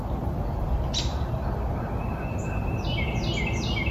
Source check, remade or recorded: recorded